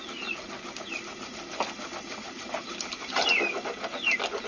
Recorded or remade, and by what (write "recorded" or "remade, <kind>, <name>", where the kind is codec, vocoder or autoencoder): recorded